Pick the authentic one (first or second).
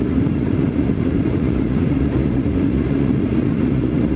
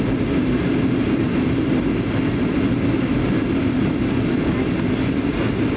second